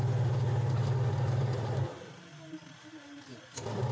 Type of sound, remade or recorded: recorded